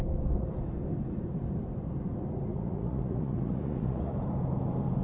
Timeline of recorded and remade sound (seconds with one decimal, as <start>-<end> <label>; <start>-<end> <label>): 0.0-2.5 recorded; 2.5-4.1 remade; 4.1-5.0 recorded